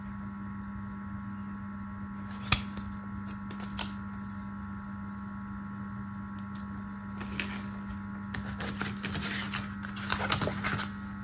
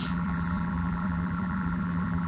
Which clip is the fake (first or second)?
second